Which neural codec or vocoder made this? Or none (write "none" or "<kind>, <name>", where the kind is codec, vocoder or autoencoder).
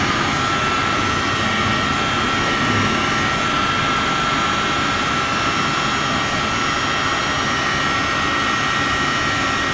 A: none